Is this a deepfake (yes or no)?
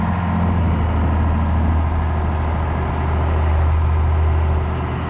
no